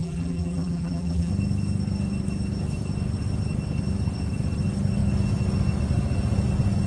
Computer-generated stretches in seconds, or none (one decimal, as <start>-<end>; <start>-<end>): 0.0-1.3